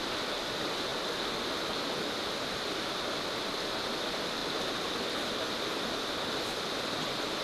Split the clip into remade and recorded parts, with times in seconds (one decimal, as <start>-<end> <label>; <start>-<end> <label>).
0.0-7.4 recorded